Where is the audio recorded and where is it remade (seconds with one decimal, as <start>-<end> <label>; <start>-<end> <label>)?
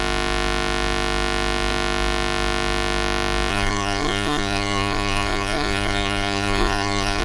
0.0-3.5 recorded; 3.5-7.2 remade